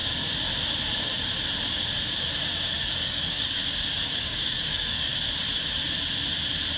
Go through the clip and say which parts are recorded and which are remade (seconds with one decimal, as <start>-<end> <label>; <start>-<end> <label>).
0.0-2.9 recorded; 2.9-3.6 remade; 3.6-4.2 recorded; 4.2-5.1 remade; 5.1-6.8 recorded